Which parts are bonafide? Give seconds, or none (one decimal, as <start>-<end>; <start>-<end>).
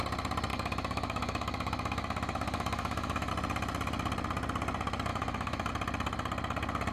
0.0-0.5; 3.3-5.1; 5.7-6.9